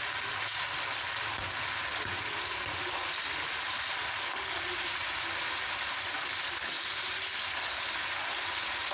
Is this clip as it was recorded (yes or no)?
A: yes